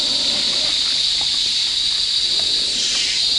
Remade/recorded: recorded